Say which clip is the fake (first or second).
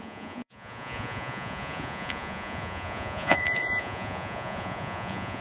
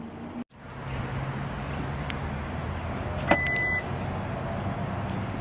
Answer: first